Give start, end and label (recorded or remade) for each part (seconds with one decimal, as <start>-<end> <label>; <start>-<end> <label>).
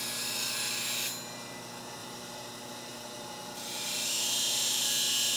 0.0-2.0 recorded; 2.0-4.8 remade; 4.8-5.4 recorded